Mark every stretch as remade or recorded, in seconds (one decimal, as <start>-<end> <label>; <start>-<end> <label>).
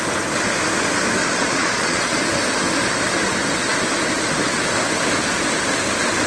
0.0-1.2 recorded; 1.2-2.2 remade; 2.2-6.3 recorded